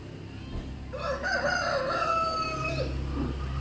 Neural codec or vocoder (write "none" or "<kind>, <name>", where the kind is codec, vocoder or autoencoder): none